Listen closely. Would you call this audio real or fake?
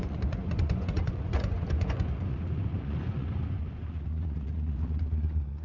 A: fake